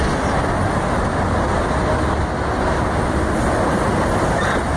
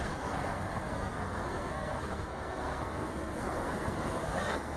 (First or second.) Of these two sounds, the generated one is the second